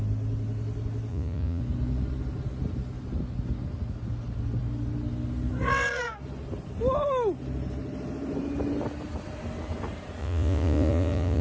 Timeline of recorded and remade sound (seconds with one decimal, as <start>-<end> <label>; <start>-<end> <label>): 0.0-1.1 recorded; 1.1-1.6 remade; 1.6-10.2 recorded; 10.2-11.4 remade